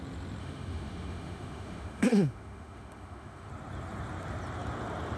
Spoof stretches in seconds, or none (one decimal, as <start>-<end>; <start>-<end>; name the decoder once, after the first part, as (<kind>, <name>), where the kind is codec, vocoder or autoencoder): 0.4-3.5 (autoencoder, DAC-VAE)